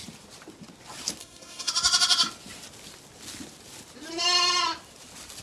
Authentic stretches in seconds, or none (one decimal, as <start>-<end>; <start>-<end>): 0.0-1.2; 1.7-5.4